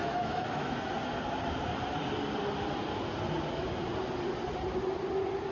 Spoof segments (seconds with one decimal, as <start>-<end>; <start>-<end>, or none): 0.0-0.9